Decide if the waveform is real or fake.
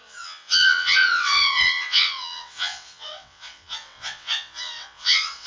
fake